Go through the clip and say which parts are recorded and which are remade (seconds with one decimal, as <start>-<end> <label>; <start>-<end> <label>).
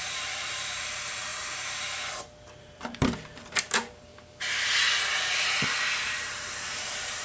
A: 0.0-0.5 recorded; 0.5-1.3 remade; 1.3-2.6 recorded; 2.6-4.1 remade; 4.1-6.0 recorded; 6.0-7.2 remade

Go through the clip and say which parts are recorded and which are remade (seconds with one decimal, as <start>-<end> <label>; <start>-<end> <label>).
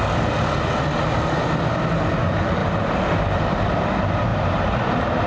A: 0.0-2.6 recorded; 2.6-3.6 remade; 3.6-4.3 recorded; 4.3-5.3 remade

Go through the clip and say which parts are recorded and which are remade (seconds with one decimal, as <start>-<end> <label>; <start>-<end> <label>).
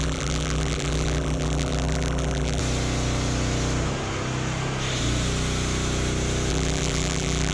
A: 0.0-2.6 remade; 2.6-6.5 recorded; 6.5-7.5 remade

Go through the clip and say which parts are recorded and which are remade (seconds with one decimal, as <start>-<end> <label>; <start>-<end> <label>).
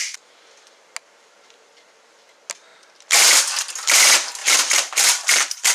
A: 0.0-4.4 recorded; 4.4-5.7 remade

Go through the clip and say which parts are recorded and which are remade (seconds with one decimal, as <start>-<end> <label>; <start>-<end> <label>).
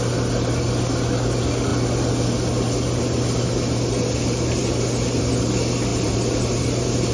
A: 0.0-5.9 recorded; 5.9-7.1 remade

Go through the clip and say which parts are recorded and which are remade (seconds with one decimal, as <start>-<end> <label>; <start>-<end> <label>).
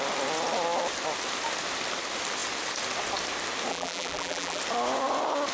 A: 0.0-3.7 recorded; 3.7-4.6 remade; 4.6-5.5 recorded